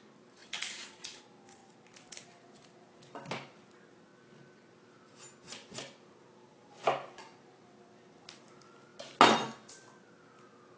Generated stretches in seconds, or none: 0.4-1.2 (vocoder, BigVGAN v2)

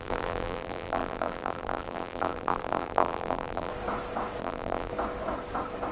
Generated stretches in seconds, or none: 0.0-3.7 (vocoder, BigVGAN v2); 4.4-4.9

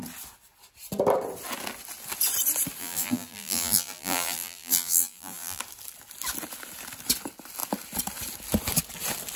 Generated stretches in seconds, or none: 2.8-5.6 (vocoder, BigVGAN v2)